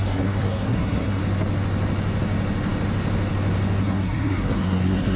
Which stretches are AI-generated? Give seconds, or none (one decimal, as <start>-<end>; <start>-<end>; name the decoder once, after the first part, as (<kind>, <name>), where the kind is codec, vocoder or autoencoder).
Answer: 0.0-1.2 (codec, SNAC); 3.8-5.2